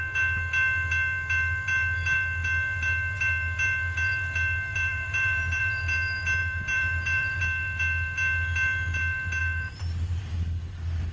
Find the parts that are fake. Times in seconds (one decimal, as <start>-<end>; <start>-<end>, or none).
4.7-5.8; 6.4-7.4; 9.4-10.2